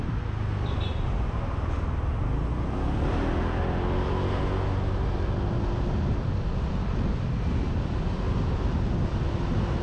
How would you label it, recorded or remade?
recorded